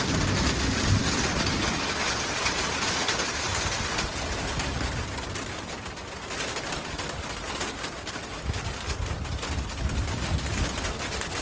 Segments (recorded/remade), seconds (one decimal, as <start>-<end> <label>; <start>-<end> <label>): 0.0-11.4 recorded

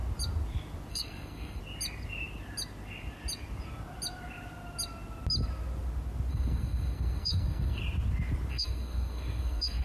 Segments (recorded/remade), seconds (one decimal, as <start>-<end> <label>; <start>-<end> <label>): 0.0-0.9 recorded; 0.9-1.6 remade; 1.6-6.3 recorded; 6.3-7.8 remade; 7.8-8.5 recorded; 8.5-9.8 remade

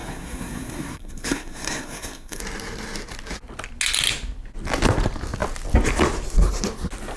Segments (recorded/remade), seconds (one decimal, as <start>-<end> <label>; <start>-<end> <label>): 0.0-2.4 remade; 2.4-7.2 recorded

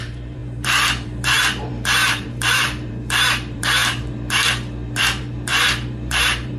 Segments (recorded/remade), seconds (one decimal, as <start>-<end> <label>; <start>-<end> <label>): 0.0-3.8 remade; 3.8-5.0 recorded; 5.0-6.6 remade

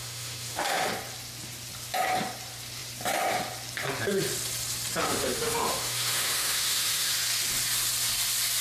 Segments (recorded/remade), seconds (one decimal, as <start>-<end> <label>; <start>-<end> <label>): 0.0-0.9 remade; 0.9-5.0 recorded; 5.0-7.1 remade; 7.1-8.6 recorded

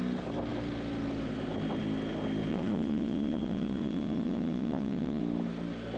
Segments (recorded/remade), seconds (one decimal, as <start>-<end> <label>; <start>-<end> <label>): 0.0-2.5 recorded; 2.5-5.2 remade; 5.2-6.0 recorded